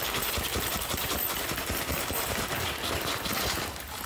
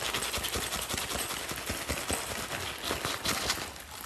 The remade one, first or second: first